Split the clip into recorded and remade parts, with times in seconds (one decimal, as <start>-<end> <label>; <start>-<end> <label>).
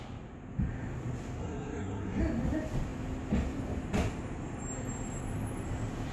0.0-1.4 recorded; 1.4-2.2 remade; 2.2-6.1 recorded